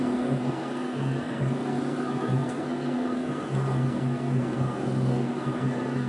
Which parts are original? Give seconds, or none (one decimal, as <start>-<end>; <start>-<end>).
none